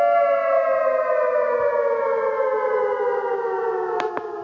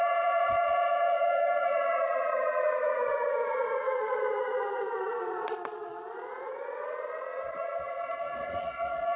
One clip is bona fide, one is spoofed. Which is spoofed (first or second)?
second